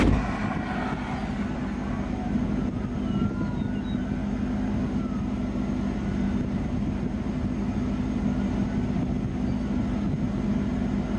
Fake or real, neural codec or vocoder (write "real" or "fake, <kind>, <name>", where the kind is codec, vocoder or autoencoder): real